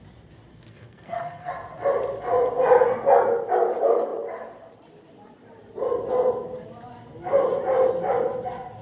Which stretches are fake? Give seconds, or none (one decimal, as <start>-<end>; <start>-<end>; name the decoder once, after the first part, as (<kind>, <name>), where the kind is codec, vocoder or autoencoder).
0.5-1.5 (codec, SNAC)